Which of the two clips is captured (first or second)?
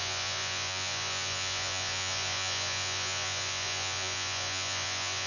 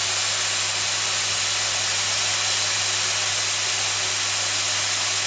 second